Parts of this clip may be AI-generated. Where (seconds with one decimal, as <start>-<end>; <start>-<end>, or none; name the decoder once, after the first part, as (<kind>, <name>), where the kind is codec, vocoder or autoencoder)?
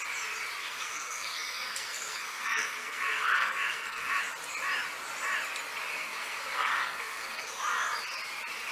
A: 0.6-4.2 (codec, SNAC); 5.9-7.5